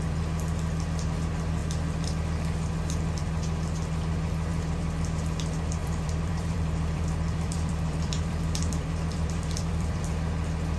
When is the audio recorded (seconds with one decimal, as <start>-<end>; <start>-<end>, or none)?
0.0-4.5; 5.2-5.8; 10.0-10.8